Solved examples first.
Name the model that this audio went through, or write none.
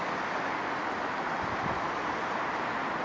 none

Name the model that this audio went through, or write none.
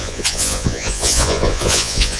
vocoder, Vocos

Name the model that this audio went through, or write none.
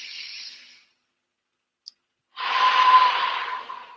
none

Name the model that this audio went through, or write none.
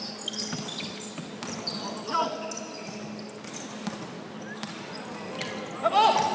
none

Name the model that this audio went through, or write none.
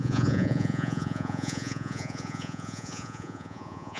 vocoder, Vocos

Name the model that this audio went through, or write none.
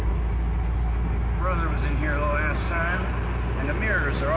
none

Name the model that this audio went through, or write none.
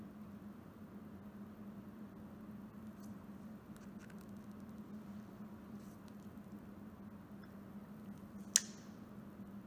none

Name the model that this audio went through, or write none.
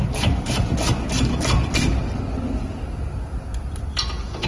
none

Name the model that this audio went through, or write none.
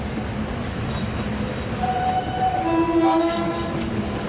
none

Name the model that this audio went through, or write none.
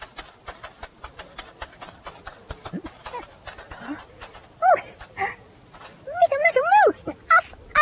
none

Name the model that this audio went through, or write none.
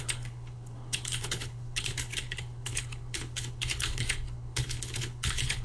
codec, HILCodec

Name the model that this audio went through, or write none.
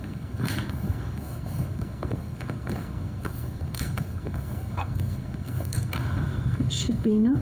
codec, SNAC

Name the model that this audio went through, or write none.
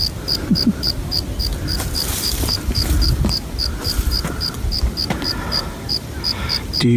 vocoder, BigVGAN v2